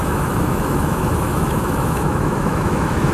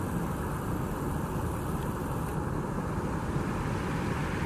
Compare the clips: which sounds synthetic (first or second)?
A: first